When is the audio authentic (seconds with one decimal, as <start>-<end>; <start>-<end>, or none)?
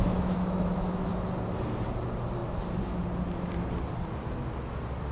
1.1-5.1